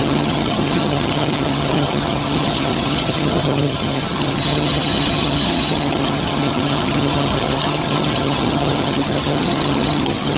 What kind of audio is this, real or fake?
fake